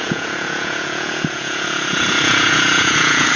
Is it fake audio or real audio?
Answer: fake